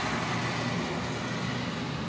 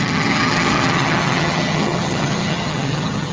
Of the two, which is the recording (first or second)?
first